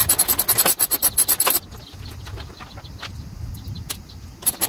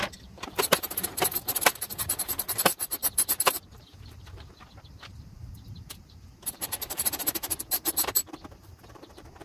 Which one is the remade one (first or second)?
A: second